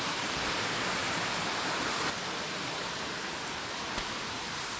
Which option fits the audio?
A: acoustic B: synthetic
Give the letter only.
A